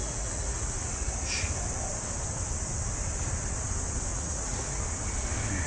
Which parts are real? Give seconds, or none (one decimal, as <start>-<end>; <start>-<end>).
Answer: 1.3-4.1; 4.8-5.7